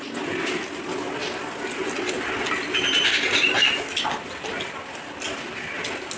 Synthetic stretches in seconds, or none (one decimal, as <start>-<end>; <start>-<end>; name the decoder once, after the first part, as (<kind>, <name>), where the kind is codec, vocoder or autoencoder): none